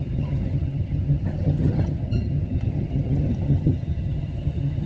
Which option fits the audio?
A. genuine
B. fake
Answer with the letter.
B